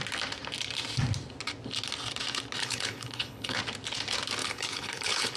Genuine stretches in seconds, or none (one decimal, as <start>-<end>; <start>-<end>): 0.0-2.6; 3.6-4.4